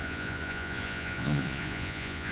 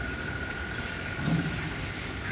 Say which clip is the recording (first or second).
second